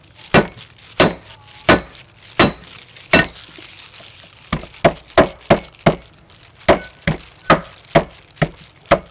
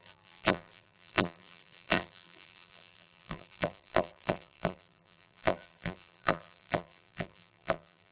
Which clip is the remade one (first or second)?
second